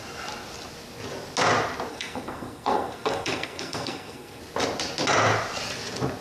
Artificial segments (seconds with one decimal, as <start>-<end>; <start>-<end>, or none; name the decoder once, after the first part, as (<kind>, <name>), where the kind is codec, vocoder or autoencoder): 1.9-4.4 (codec, SNAC)